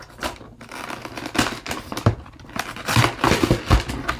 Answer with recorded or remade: recorded